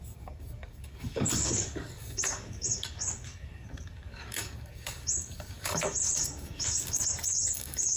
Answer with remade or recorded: remade